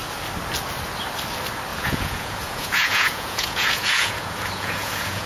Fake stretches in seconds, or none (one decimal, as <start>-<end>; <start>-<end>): 1.7-5.3